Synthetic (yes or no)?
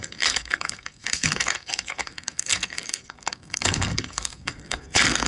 yes